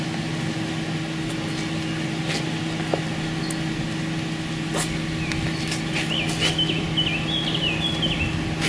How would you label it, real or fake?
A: real